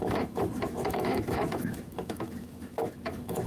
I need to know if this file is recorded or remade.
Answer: remade